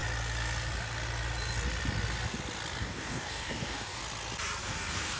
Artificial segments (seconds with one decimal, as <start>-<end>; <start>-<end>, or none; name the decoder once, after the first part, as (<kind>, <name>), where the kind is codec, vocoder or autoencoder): 2.8-4.0 (codec, DAC); 4.6-5.2